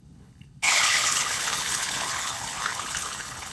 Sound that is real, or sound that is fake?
fake